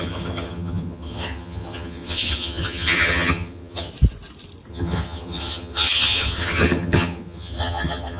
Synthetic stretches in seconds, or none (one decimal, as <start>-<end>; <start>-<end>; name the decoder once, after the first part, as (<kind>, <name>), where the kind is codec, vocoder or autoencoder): 0.0-3.9 (vocoder, HiFi-GAN); 4.7-8.2